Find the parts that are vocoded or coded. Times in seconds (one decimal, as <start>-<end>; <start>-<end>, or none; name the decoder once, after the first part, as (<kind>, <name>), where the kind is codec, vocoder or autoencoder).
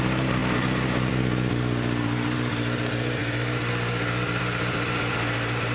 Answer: none